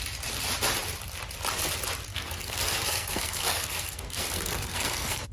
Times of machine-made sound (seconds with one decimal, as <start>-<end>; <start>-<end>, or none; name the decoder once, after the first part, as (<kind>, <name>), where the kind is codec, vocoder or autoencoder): 2.1-5.3 (codec, SNAC)

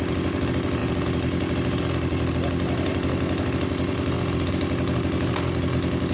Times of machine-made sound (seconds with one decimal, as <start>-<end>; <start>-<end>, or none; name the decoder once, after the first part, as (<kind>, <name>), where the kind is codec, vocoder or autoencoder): none

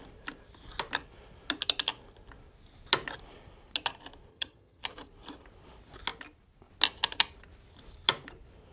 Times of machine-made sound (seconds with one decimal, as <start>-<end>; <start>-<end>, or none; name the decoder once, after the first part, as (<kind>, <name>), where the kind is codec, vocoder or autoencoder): 4.3-4.8 (vocoder, HiFi-GAN)

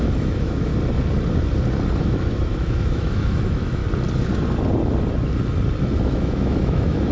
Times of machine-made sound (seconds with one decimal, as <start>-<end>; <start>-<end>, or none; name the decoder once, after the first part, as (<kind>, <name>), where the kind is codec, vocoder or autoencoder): 0.0-0.7 (autoencoder, DAC-VAE); 2.0-3.8; 6.0-7.1

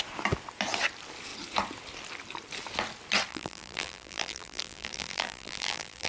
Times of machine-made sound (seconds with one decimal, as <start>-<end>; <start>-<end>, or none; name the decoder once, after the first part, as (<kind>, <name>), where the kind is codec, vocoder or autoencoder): 3.3-6.1 (vocoder, BigVGAN v2)